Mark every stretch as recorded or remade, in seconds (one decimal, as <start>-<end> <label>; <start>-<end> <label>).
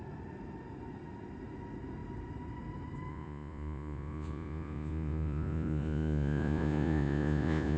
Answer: 0.0-3.1 recorded; 3.1-7.8 remade